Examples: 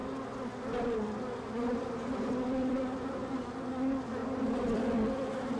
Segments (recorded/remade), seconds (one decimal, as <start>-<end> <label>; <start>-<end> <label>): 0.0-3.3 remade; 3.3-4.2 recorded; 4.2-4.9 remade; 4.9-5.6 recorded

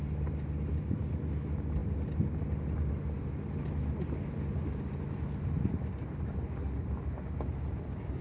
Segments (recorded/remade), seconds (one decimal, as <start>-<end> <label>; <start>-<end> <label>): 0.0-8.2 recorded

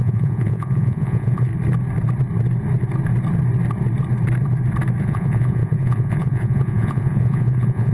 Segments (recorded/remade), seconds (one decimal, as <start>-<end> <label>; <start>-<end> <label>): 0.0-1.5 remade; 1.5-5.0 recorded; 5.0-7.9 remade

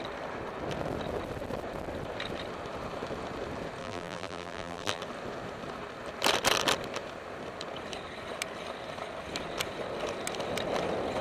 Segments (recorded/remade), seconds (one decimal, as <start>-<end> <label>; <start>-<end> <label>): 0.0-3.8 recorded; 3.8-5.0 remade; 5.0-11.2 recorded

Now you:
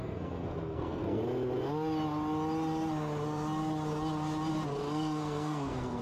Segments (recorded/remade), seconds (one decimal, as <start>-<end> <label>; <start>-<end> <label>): 0.0-1.2 remade; 1.2-4.8 recorded; 4.8-6.0 remade